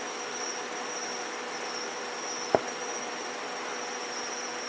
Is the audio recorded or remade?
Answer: recorded